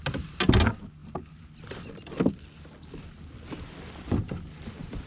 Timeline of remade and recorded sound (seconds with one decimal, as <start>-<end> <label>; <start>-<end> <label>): 0.0-1.0 recorded; 1.0-2.3 remade; 2.3-5.1 recorded